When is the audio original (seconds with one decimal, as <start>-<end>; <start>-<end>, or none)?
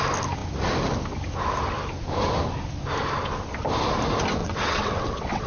0.0-4.4